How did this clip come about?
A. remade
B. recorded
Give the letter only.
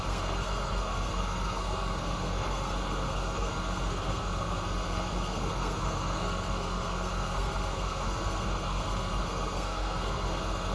A